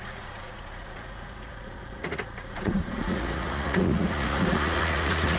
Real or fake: fake